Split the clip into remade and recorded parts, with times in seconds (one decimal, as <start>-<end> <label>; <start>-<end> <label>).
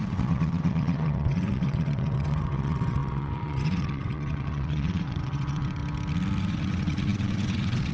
0.0-5.8 remade; 5.8-6.4 recorded; 6.4-7.9 remade